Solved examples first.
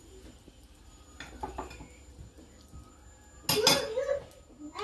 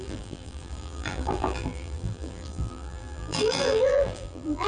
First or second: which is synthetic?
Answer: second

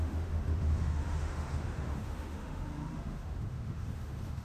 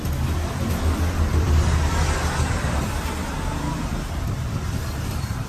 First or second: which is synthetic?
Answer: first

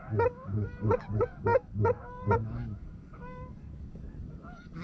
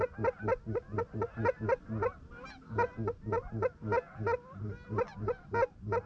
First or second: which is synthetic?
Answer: first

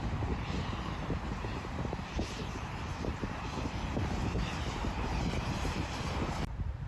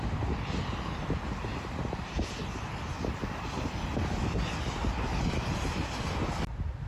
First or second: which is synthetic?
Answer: first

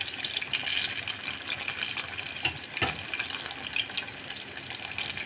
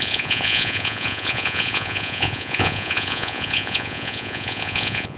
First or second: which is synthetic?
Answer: second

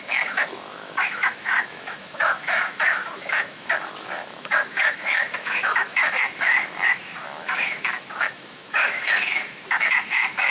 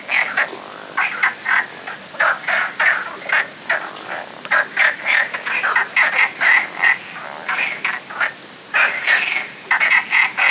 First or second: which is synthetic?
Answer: first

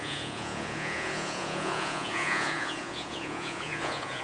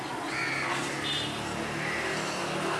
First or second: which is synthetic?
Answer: first